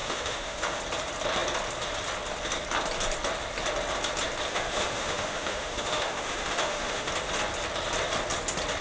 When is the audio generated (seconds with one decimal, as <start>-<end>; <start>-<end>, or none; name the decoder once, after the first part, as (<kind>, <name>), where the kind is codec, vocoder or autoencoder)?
0.0-0.8 (autoencoder, DAC-VAE); 4.5-7.1